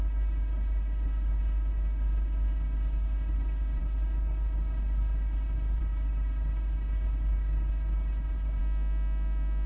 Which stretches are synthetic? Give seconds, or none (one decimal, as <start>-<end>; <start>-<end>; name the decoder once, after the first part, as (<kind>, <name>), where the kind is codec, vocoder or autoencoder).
0.0-8.6 (codec, HILCodec)